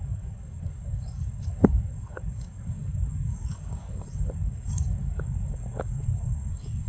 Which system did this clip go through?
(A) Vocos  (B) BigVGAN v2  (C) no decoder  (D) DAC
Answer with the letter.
D